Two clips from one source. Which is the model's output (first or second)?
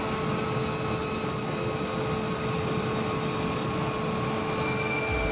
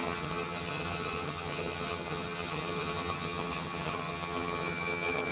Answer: second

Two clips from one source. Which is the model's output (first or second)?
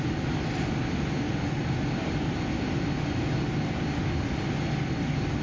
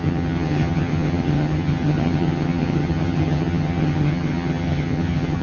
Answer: second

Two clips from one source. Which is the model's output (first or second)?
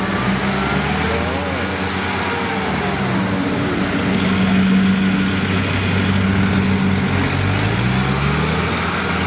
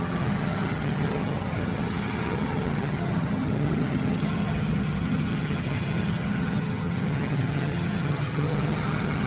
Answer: second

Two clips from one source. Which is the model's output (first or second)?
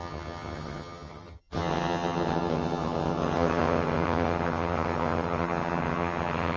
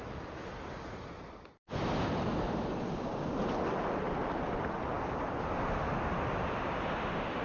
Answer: first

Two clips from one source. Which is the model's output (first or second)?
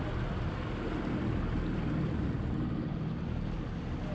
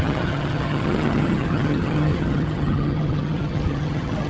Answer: second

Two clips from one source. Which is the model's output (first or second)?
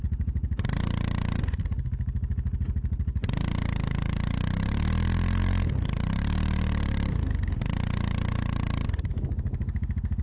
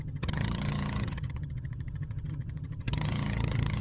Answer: second